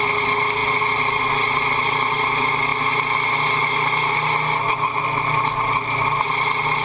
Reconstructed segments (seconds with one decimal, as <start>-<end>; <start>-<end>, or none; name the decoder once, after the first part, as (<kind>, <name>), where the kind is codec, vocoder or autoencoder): none